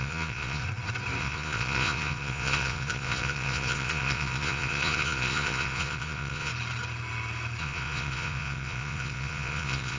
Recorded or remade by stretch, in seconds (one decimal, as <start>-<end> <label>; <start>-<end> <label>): 0.0-0.6 remade; 0.6-1.2 recorded; 1.2-6.5 remade; 6.5-7.6 recorded; 7.6-10.0 remade